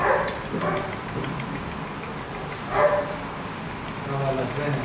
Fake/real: real